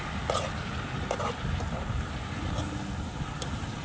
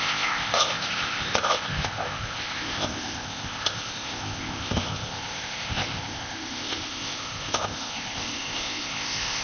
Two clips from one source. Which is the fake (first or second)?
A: second